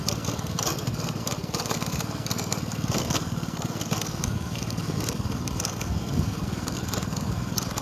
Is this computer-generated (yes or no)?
yes